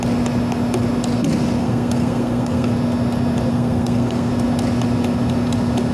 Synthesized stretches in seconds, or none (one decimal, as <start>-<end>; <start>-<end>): 1.6-2.7; 3.5-4.3